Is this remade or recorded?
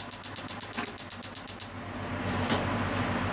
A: recorded